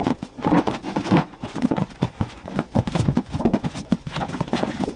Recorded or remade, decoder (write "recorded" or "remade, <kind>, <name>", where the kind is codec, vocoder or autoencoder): remade, vocoder, Vocos